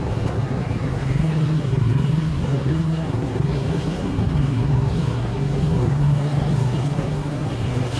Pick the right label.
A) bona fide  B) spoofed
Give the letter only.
B